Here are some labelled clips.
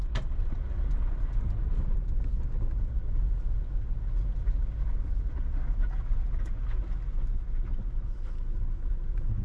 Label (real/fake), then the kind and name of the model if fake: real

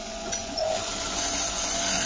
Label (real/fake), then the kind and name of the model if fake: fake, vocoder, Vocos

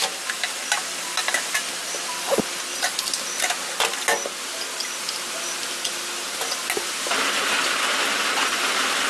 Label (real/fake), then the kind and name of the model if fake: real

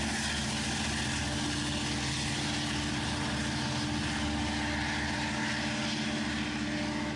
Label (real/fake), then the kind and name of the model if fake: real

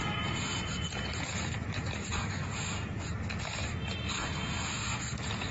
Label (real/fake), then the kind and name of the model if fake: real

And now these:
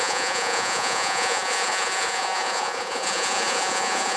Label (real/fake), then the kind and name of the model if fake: fake, vocoder, Vocos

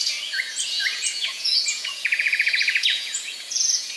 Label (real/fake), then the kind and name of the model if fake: fake, vocoder, Vocos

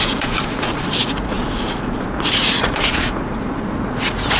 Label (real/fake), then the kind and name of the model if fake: fake, vocoder, Vocos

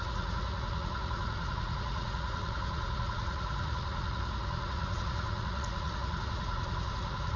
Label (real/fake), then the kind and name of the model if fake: fake, vocoder, Vocos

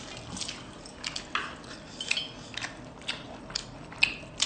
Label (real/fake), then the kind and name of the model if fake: real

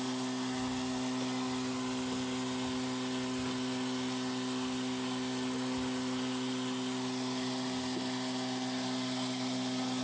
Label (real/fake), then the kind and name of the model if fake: real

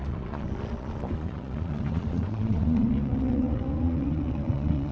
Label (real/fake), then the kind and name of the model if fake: fake, vocoder, Vocos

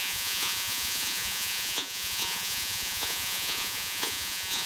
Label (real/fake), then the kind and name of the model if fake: fake, vocoder, Vocos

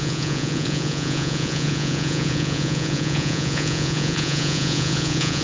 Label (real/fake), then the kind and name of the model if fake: fake, vocoder, Vocos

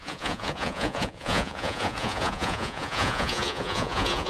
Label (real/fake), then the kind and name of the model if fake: fake, vocoder, Vocos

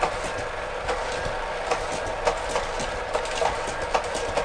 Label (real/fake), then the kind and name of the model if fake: real